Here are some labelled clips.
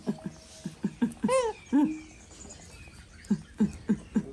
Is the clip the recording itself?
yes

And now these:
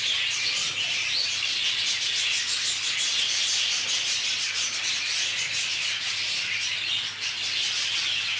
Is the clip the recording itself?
yes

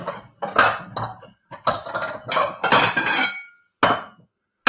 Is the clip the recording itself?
yes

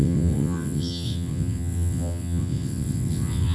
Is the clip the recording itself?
no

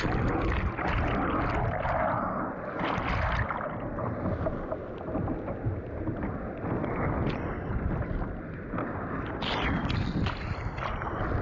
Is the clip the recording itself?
yes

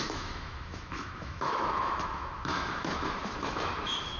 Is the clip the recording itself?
no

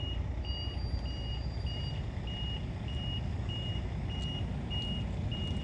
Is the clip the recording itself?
yes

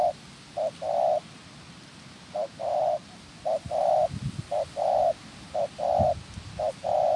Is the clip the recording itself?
yes